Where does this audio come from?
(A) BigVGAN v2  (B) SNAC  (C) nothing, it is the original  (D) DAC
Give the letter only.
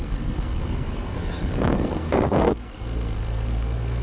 B